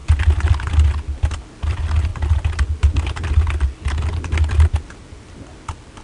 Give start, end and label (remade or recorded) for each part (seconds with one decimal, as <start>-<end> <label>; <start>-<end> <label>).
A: 0.0-6.0 recorded